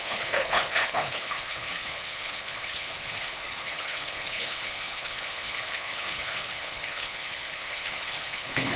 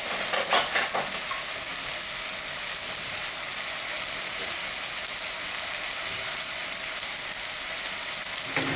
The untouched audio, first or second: second